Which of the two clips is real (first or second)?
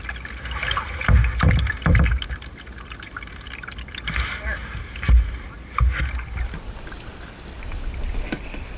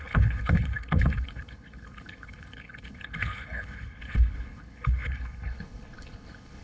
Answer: first